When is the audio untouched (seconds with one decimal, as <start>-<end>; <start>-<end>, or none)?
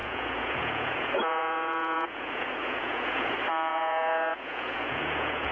3.3-3.7